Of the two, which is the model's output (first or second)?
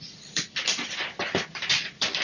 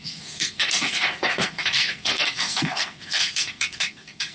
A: second